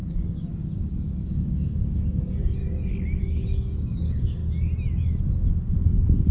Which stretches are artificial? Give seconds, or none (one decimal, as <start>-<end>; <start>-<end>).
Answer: 0.0-2.6; 3.2-4.4